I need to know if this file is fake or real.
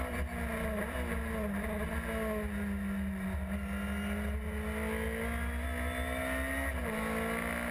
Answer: real